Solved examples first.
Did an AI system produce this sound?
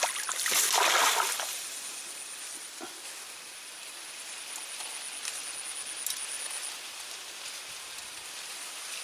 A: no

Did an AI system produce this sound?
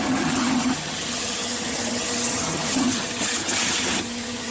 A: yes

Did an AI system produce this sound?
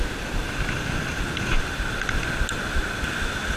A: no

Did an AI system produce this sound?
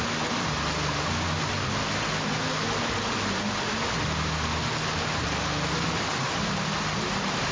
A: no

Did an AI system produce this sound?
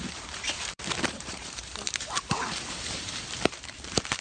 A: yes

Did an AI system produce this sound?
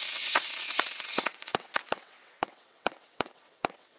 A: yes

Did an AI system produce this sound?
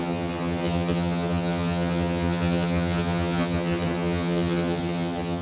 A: yes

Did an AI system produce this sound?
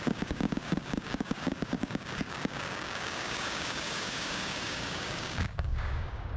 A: yes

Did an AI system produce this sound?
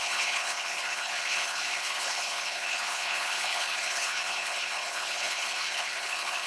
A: yes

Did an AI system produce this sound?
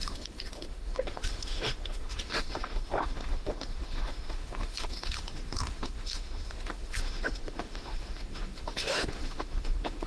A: yes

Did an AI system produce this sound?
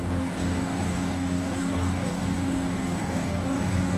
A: yes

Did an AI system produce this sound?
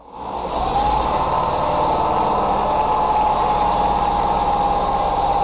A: no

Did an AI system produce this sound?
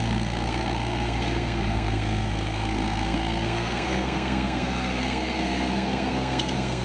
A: yes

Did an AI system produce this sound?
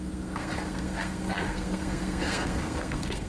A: yes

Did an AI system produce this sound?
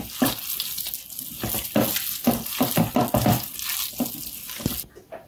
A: no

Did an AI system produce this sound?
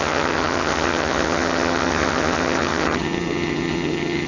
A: yes